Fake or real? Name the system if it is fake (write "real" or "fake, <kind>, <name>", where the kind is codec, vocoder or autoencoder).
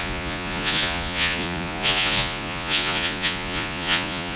fake, vocoder, Vocos